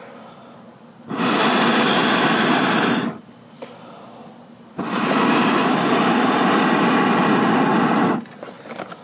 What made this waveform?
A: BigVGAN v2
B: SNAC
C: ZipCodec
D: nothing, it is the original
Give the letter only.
D